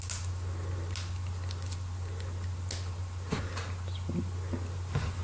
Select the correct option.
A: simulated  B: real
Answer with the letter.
B